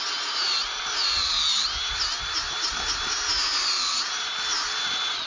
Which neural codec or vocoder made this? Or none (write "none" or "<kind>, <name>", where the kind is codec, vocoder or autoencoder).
none